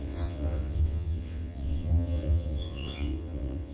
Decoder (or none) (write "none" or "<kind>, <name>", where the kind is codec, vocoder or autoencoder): vocoder, WaveNeXt